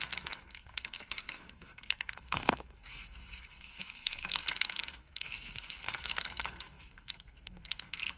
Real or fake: fake